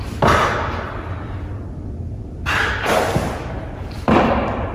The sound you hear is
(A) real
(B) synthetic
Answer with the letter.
A